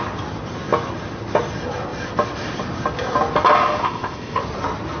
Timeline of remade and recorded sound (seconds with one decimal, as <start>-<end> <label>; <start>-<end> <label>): 0.0-3.8 recorded; 3.8-4.4 remade; 4.4-5.0 recorded

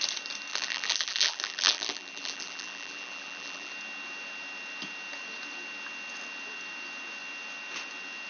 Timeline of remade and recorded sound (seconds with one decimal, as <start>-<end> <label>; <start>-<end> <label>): 0.0-0.5 recorded; 0.5-3.7 remade; 3.7-8.3 recorded

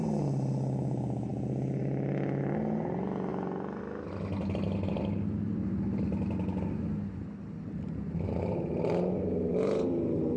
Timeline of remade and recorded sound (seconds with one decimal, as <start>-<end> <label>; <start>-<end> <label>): 0.0-10.4 recorded

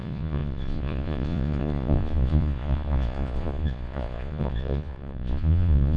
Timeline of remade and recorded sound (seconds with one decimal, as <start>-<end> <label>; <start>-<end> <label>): 0.0-6.0 remade

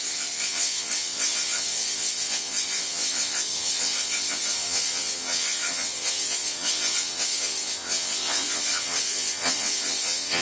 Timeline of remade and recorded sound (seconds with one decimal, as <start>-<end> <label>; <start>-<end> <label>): 0.0-10.4 remade

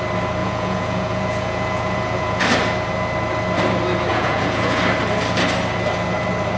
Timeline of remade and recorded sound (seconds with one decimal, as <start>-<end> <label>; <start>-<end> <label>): 0.0-0.4 recorded; 0.4-2.4 remade; 2.4-4.1 recorded; 4.1-4.8 remade; 4.8-6.6 recorded

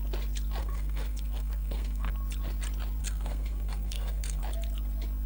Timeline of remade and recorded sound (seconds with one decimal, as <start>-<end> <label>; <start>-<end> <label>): 0.0-0.6 recorded; 0.6-2.1 remade; 2.1-3.0 recorded; 3.0-4.4 remade; 4.4-5.3 recorded

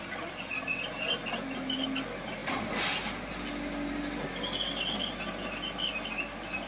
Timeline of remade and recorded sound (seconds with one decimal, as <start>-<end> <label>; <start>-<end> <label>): 0.0-6.7 recorded